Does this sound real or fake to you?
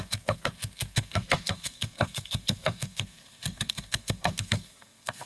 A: fake